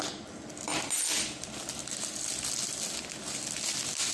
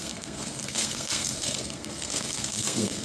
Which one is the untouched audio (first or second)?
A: first